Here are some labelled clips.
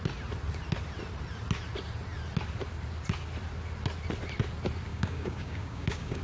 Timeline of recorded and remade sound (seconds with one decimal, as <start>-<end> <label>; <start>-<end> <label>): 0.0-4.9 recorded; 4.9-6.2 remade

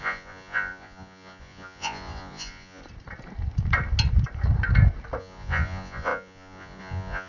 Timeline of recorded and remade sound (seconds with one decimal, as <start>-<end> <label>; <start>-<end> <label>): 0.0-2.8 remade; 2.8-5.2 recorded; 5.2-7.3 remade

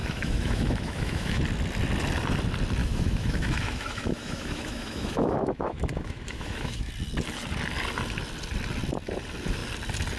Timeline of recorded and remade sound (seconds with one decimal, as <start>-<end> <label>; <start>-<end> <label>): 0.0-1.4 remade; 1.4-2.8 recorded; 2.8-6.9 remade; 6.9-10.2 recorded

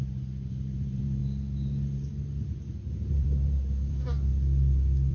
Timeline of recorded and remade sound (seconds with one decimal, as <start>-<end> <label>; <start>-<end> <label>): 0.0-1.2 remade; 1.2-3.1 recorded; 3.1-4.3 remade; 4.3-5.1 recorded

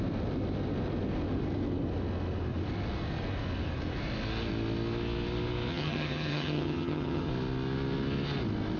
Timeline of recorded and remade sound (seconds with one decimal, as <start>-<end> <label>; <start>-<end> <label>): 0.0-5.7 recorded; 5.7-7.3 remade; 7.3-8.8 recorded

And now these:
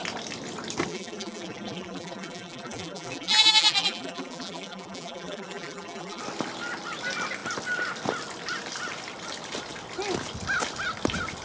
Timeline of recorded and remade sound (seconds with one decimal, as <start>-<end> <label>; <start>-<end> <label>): 0.0-0.9 recorded; 0.9-6.2 remade; 6.2-11.4 recorded